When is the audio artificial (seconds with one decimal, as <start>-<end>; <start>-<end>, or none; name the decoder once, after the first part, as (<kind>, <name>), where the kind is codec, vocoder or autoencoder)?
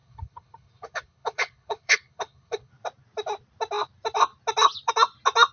0.0-2.7 (codec, HILCodec)